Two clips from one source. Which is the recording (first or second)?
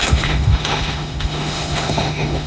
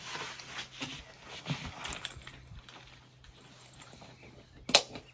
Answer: second